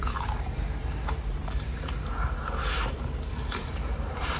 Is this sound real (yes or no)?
no